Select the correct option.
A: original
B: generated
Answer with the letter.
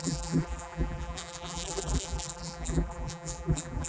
B